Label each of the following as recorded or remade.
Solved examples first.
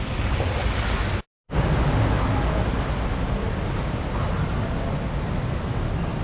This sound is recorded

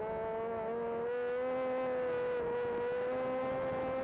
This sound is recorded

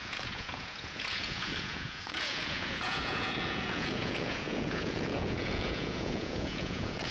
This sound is remade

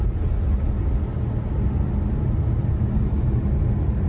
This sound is recorded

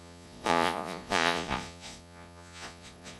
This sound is remade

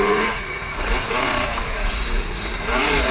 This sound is remade